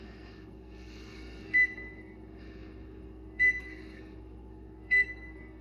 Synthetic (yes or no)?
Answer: yes